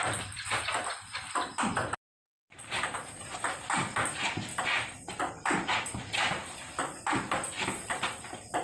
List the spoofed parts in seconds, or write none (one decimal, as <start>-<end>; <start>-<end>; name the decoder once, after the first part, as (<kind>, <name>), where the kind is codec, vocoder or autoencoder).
0.0-6.4 (vocoder, BigVGAN v2); 7.9-8.6